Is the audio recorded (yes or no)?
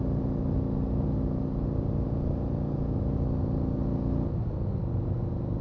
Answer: yes